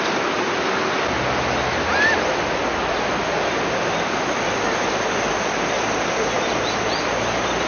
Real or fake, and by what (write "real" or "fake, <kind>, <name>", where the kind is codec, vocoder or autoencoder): real